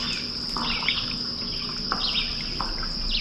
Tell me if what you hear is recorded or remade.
recorded